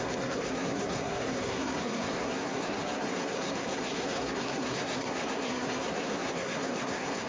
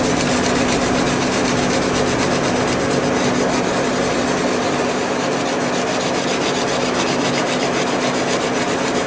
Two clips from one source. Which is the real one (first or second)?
second